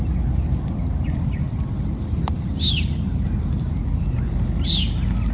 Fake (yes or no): no